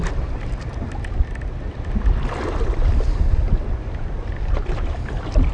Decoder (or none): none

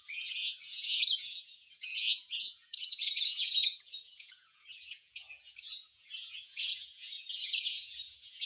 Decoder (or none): vocoder, Vocos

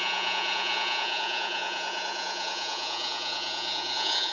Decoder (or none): vocoder, Vocos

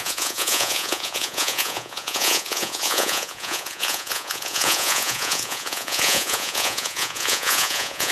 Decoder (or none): vocoder, Vocos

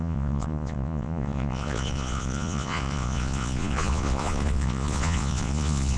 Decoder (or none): vocoder, Vocos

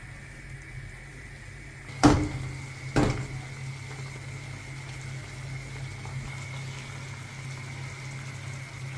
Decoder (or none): none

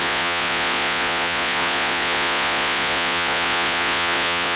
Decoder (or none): vocoder, Vocos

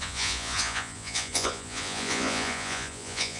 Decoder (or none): vocoder, Vocos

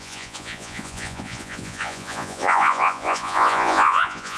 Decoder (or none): vocoder, Vocos